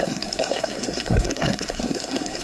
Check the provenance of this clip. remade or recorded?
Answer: remade